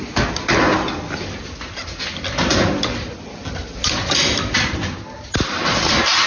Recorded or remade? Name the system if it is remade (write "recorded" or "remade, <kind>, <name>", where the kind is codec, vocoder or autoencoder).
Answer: recorded